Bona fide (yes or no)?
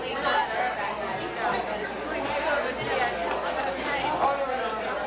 yes